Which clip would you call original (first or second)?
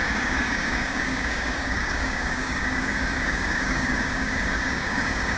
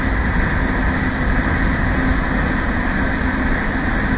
second